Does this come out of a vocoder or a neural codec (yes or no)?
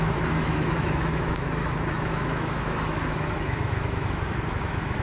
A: yes